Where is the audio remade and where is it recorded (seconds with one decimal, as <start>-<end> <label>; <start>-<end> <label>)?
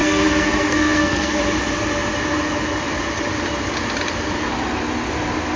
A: 0.0-1.4 remade; 1.4-5.6 recorded